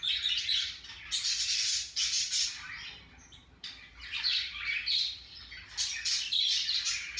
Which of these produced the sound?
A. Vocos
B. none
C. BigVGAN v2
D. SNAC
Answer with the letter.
B